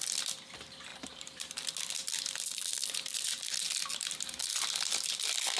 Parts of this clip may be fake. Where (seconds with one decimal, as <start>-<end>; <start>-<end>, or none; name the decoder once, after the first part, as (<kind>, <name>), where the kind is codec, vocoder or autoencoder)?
0.9-1.5 (vocoder, BigVGAN v2)